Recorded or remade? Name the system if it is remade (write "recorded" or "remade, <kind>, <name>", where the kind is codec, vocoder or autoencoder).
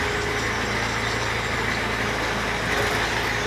recorded